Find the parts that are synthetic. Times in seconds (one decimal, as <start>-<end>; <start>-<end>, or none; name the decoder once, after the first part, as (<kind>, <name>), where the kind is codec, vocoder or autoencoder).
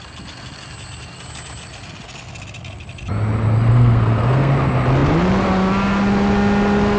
3.7-4.5 (codec, SNAC)